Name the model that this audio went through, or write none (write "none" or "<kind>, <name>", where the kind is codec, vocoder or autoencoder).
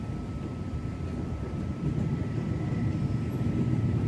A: vocoder, BigVGAN v2